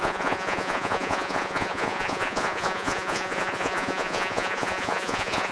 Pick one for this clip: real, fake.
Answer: fake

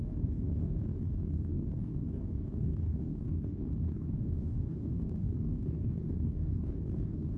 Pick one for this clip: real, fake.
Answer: fake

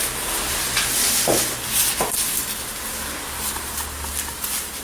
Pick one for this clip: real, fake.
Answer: real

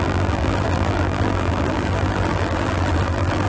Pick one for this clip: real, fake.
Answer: fake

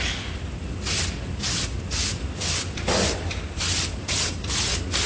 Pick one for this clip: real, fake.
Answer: real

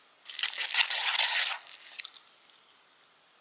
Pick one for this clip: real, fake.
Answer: real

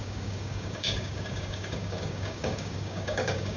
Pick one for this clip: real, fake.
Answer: fake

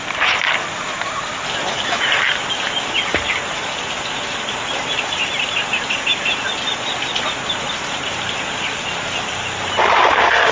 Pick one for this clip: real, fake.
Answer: real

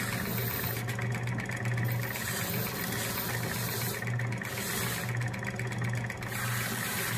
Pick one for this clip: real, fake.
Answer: real